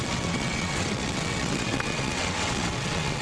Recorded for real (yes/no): no